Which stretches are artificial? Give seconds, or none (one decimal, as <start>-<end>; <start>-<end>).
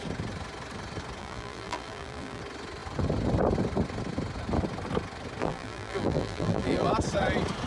1.2-2.4; 5.4-6.9